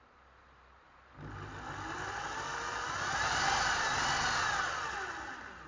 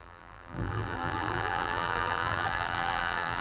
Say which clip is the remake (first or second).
second